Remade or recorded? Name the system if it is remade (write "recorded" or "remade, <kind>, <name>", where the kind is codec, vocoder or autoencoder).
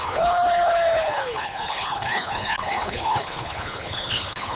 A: remade, codec, HILCodec